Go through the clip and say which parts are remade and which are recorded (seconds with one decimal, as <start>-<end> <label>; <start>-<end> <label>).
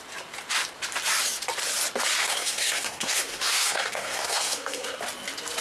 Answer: 0.0-2.2 recorded; 2.2-5.0 remade; 5.0-5.6 recorded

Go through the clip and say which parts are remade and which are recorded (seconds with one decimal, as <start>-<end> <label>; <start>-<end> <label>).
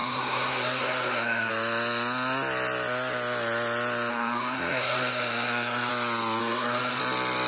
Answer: 0.0-1.5 remade; 1.5-4.1 recorded; 4.1-5.9 remade; 5.9-6.4 recorded; 6.4-7.0 remade; 7.0-7.5 recorded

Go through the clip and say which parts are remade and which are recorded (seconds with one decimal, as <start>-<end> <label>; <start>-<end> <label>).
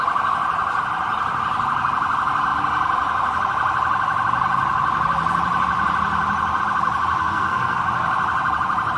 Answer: 0.0-7.2 recorded; 7.2-7.8 remade; 7.8-9.0 recorded